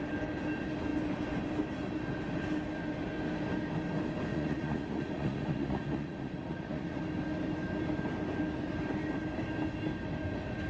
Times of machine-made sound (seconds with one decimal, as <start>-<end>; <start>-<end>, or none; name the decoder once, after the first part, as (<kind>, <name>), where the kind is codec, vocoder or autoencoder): 4.3-7.0 (vocoder, Vocos)